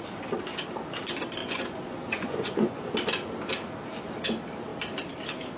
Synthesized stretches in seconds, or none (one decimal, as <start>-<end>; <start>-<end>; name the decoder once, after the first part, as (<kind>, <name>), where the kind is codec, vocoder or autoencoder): 1.4-2.9 (vocoder, Vocos)